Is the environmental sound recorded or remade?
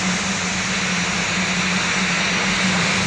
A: recorded